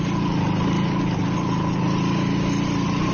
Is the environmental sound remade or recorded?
recorded